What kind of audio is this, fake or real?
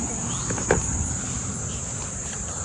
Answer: fake